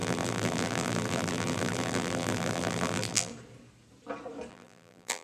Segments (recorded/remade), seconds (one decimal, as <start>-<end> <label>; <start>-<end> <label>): 0.0-3.3 remade; 3.3-4.5 recorded; 4.5-5.2 remade